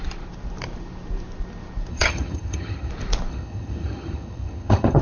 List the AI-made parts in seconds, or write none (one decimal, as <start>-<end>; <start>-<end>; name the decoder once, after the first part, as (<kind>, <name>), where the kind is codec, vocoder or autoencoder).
1.9-2.9 (vocoder, HiFi-GAN); 3.3-5.0